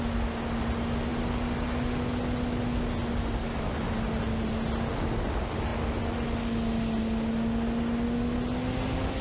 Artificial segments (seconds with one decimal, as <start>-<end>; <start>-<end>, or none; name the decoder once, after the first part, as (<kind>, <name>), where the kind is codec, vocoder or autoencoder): none